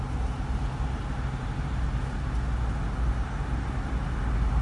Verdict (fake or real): real